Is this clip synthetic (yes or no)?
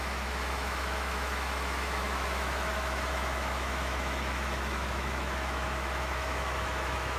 yes